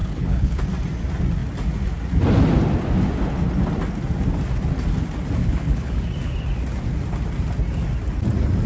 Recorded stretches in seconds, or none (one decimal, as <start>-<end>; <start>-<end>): 0.6-5.4; 6.0-8.7